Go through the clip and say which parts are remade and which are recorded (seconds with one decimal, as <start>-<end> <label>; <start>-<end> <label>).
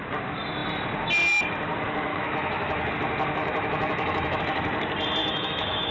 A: 0.0-2.1 recorded; 2.1-2.9 remade; 2.9-3.4 recorded; 3.4-4.4 remade; 4.4-5.2 recorded; 5.2-5.9 remade